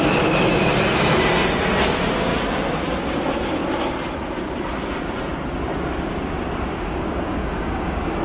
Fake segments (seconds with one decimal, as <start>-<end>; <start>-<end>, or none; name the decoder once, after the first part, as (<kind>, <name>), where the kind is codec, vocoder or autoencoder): 6.7-8.2 (codec, DAC)